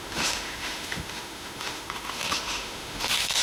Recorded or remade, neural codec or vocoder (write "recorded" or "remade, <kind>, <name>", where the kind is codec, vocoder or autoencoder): remade, autoencoder, DAC-VAE